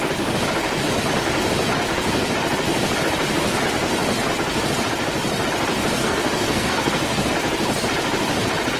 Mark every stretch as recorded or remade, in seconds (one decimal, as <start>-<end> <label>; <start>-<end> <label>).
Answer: 0.0-6.0 recorded; 6.0-7.3 remade; 7.3-8.8 recorded